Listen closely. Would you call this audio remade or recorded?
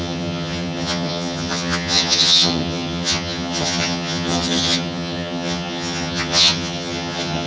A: remade